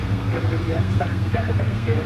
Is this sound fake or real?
fake